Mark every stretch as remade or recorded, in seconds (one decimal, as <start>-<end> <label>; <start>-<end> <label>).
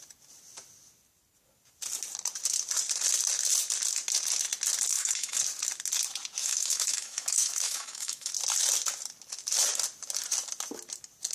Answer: 0.0-4.9 recorded; 4.9-5.4 remade; 5.4-6.4 recorded; 6.4-8.3 remade; 8.3-11.3 recorded